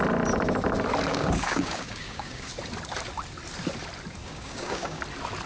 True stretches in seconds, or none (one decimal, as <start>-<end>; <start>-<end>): 0.0-1.1; 2.5-4.2; 5.0-5.5